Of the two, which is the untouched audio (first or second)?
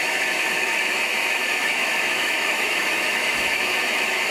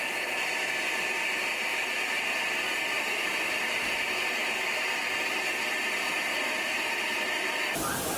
second